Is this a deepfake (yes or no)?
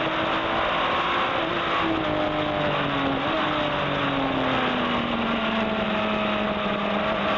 no